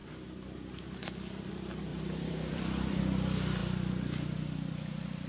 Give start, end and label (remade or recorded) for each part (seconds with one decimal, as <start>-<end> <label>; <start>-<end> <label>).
0.0-1.5 remade; 1.5-1.9 recorded; 1.9-3.0 remade; 3.0-5.3 recorded